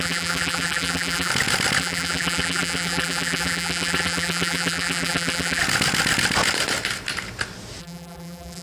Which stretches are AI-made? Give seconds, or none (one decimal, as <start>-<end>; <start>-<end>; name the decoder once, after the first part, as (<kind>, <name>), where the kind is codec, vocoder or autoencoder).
0.0-1.3 (vocoder, BigVGAN v2); 1.8-5.6; 7.8-8.6